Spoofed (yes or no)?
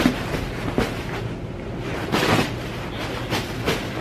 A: no